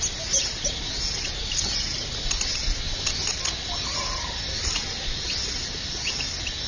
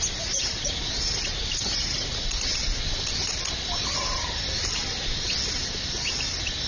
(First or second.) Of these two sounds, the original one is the first